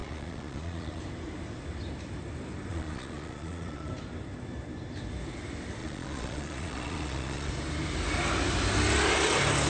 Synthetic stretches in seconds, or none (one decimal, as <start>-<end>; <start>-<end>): 0.0-1.0; 2.7-3.9; 5.8-7.5